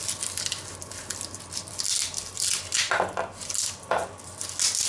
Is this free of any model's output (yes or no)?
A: yes